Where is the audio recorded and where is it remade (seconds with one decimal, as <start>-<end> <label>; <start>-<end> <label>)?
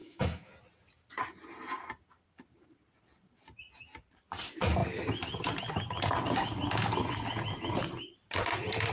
0.0-0.5 remade; 0.5-8.9 recorded